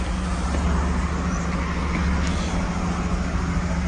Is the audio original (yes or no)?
yes